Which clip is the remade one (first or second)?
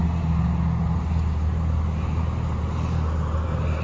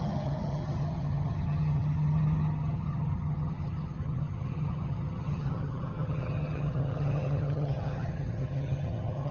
second